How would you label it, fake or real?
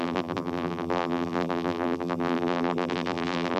fake